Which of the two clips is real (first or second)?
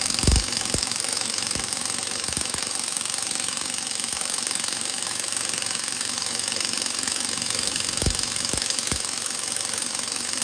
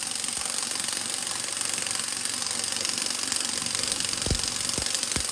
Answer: second